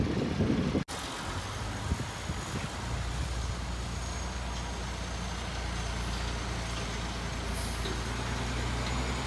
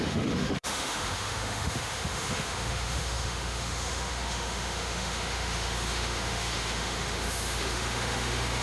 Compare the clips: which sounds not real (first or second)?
second